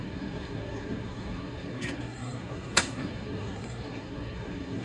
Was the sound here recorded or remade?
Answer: remade